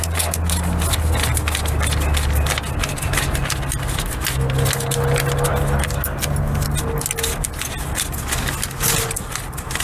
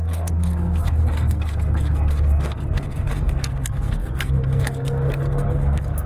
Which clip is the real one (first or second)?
first